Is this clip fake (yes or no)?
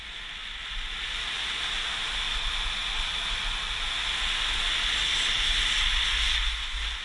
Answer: no